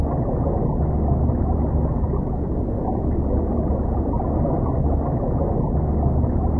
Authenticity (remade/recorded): recorded